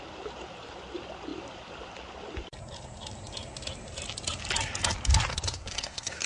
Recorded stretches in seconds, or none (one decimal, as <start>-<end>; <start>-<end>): 0.0-5.3